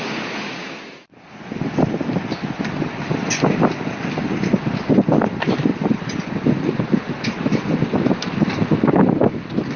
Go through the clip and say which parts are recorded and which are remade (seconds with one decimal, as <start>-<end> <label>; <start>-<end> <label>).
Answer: 0.0-9.8 recorded